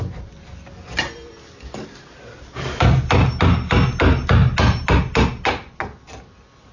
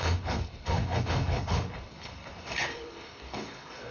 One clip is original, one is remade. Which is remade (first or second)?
second